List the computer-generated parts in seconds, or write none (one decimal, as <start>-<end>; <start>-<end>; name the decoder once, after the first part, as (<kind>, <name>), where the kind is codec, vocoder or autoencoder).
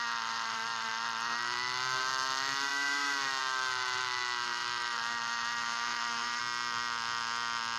0.0-6.4 (autoencoder, DAC-VAE)